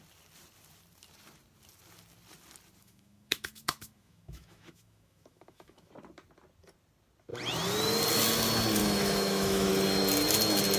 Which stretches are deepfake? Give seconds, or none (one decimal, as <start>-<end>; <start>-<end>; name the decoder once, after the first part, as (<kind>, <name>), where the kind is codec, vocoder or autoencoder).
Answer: 2.8-5.9 (autoencoder, DAC-VAE); 8.8-9.7